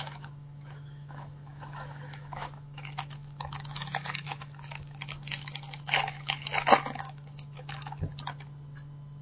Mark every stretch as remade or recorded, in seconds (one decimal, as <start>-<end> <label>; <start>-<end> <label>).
0.0-8.1 remade; 8.1-9.2 recorded